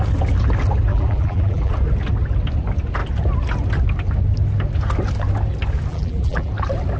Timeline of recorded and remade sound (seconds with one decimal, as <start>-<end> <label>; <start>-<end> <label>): 0.0-0.9 recorded; 0.9-1.7 remade; 1.7-5.9 recorded; 5.9-6.5 remade; 6.5-7.0 recorded